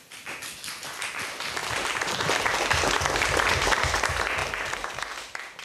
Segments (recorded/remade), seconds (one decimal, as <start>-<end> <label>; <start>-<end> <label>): 0.0-5.6 recorded